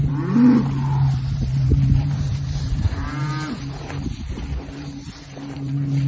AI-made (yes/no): yes